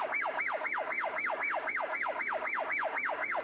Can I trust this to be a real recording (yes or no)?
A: no